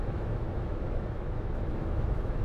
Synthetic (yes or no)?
yes